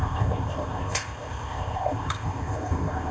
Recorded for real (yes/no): no